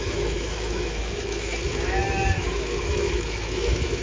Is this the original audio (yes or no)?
no